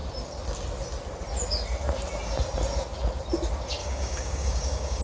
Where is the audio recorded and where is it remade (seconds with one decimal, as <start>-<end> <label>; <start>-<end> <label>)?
0.0-3.8 recorded; 3.8-5.0 remade